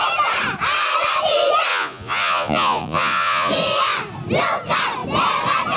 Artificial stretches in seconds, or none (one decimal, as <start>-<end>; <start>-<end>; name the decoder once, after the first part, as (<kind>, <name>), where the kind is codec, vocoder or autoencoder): 1.7-3.5 (vocoder, Vocos)